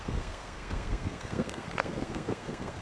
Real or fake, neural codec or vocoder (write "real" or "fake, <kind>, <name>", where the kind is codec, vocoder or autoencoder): fake, codec, SNAC